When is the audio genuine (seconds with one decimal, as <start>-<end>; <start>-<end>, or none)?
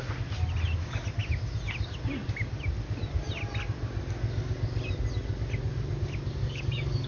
0.0-6.4